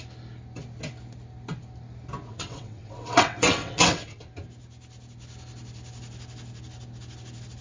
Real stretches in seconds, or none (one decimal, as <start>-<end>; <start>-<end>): 0.0-2.3; 4.2-7.6